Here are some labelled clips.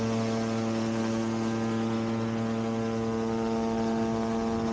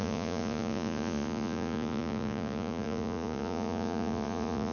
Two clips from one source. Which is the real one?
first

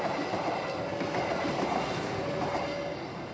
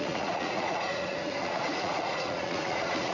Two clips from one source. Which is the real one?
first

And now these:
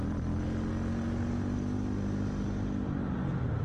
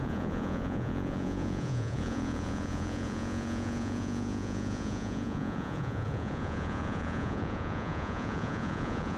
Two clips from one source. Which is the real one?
first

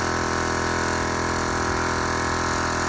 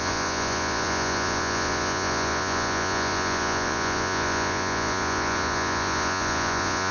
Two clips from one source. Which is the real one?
first